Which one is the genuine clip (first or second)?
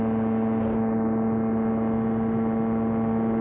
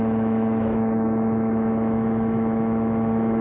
first